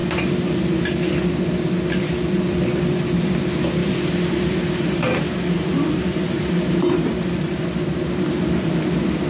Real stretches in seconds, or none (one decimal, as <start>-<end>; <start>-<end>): 0.0-3.8; 7.6-9.3